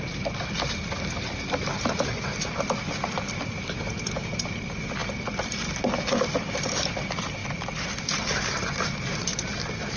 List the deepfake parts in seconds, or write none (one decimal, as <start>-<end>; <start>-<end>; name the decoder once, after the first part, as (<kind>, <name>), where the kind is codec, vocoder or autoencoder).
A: 0.0-10.0 (vocoder, BigVGAN v2)